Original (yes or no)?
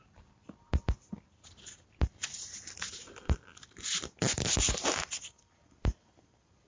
yes